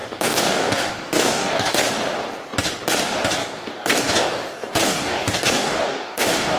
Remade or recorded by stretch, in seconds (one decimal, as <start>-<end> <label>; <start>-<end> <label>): 0.0-1.9 remade; 1.9-3.4 recorded; 3.4-6.6 remade